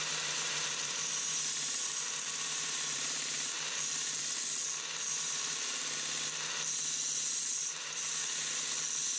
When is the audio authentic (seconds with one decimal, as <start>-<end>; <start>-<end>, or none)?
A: 4.2-5.0; 5.8-7.6; 8.2-9.2